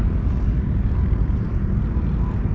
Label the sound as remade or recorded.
recorded